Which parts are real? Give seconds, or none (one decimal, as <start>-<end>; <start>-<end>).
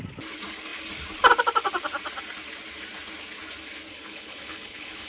0.0-3.9